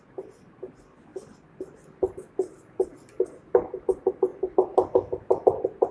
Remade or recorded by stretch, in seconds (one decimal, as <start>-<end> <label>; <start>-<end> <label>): 0.0-2.9 recorded; 2.9-3.5 remade; 3.5-5.9 recorded